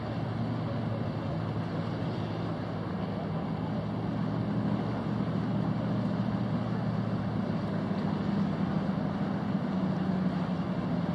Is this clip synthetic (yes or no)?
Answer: no